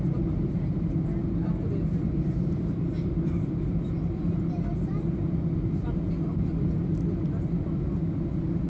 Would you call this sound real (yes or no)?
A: yes